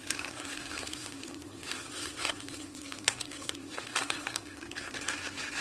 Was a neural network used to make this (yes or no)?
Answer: yes